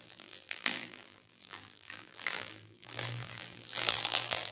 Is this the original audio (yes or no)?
no